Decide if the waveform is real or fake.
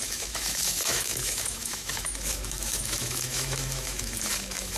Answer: fake